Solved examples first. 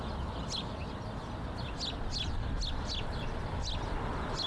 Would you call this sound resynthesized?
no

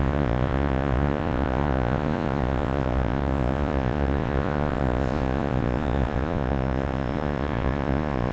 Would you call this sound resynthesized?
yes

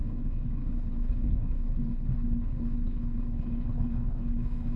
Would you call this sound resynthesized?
yes